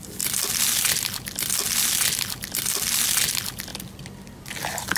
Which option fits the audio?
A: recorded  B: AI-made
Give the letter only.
A